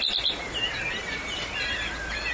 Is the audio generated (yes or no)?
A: no